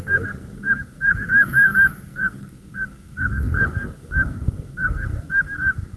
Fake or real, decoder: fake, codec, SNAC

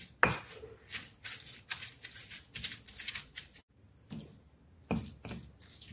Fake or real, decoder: real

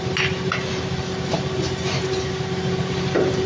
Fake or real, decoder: real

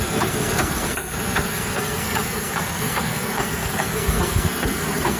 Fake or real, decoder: fake, codec, SNAC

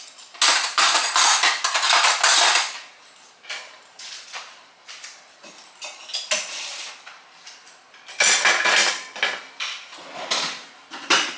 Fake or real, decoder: real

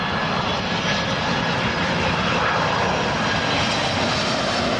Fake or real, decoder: real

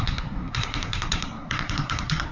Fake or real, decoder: fake, codec, SNAC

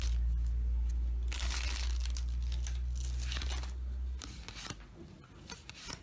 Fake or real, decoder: real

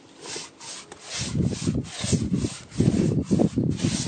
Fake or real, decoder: real